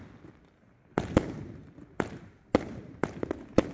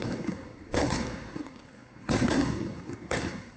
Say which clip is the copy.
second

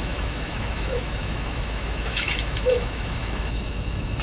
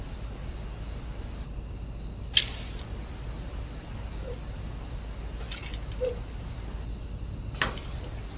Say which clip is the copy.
first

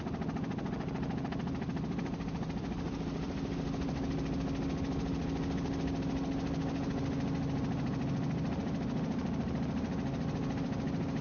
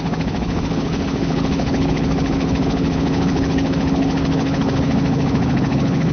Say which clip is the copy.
second